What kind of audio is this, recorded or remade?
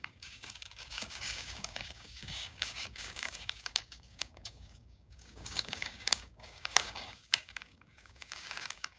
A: remade